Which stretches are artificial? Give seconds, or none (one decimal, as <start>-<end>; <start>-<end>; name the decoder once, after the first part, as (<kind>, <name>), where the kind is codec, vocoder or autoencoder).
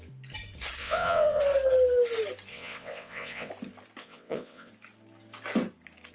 0.8-1.4 (vocoder, WaveNeXt); 2.5-3.5; 4.0-4.7